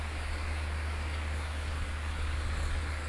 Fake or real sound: fake